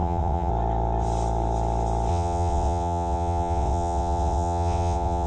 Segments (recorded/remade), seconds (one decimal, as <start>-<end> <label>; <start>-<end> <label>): 0.0-0.5 remade; 0.5-2.1 recorded; 2.1-5.3 remade